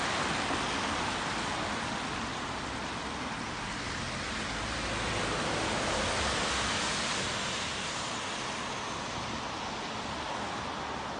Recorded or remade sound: recorded